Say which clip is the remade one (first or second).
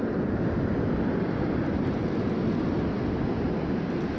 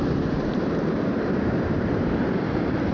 second